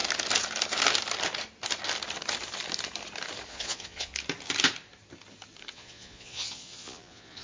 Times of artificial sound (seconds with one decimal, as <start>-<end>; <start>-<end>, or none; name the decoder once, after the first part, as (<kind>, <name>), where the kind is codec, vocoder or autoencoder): 3.5-4.1 (vocoder, Vocos); 5.7-7.4